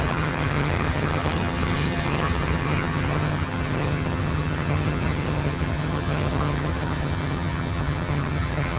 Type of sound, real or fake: fake